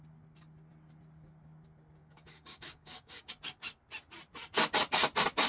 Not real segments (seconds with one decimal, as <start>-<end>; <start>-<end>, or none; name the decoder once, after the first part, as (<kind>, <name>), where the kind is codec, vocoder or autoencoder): 2.0-3.3 (codec, DAC)